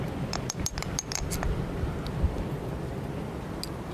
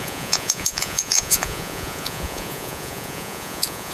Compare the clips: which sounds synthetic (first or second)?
second